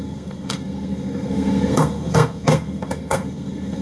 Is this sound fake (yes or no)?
yes